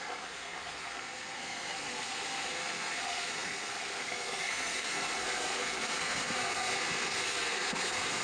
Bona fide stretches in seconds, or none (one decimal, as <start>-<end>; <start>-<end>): none